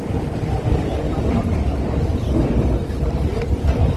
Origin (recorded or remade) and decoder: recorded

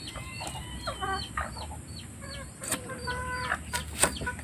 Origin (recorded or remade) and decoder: recorded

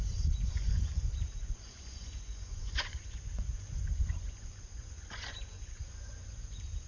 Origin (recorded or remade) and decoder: remade, vocoder, Vocos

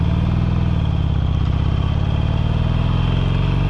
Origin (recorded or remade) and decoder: recorded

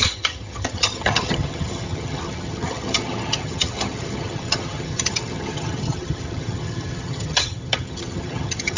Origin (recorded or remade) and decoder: remade, vocoder, HiFi-GAN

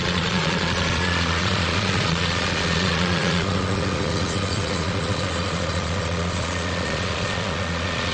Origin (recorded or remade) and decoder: remade, vocoder, Vocos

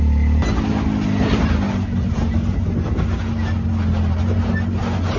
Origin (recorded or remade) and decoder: recorded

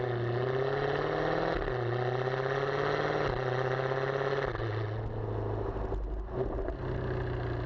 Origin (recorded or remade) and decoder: recorded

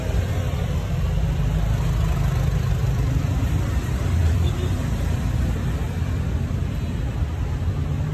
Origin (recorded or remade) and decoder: recorded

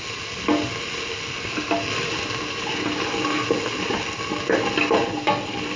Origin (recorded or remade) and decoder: recorded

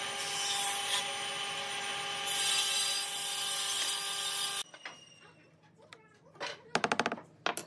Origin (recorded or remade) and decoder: recorded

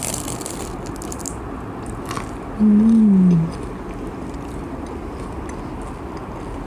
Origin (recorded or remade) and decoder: recorded